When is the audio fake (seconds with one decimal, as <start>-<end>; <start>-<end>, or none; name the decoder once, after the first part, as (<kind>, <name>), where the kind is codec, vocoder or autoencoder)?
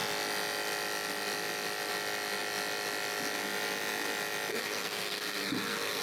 4.5-6.0 (codec, SNAC)